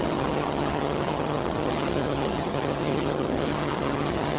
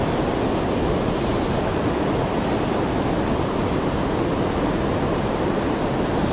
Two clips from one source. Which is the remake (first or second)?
first